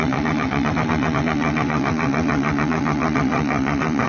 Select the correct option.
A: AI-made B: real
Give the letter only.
A